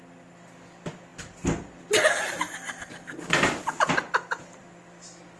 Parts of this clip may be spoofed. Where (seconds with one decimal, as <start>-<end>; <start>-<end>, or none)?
none